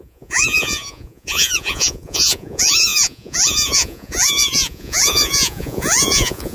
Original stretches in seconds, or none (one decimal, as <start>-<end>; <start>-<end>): none